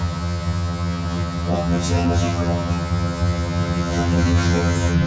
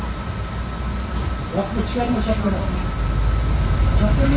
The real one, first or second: second